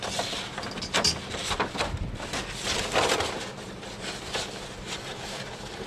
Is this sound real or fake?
real